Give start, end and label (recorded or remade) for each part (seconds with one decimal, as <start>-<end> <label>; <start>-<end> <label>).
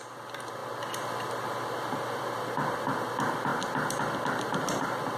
0.0-5.2 recorded